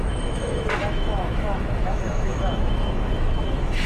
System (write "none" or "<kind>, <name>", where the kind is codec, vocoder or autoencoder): autoencoder, DAC-VAE